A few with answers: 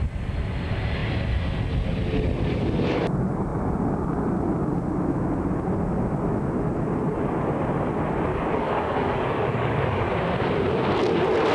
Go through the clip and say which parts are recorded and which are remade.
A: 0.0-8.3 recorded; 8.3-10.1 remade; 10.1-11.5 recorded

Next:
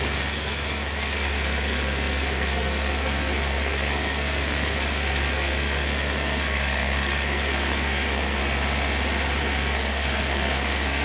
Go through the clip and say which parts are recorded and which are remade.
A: 0.0-8.4 remade; 8.4-9.4 recorded; 9.4-11.0 remade